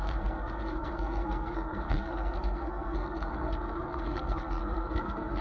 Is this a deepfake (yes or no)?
yes